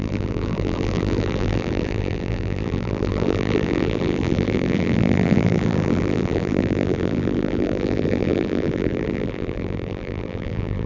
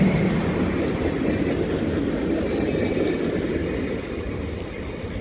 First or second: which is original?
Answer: second